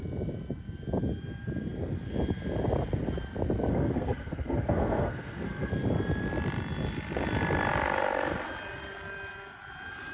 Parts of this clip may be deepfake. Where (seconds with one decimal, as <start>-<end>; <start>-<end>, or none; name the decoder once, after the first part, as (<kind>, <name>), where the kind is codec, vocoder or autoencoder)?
3.7-5.7 (codec, SNAC)